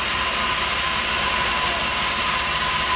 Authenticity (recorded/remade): recorded